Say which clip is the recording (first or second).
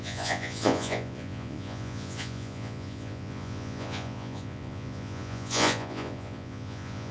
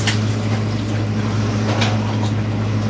second